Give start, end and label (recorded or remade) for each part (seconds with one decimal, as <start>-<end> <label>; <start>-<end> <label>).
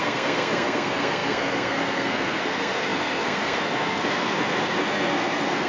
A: 0.0-5.7 remade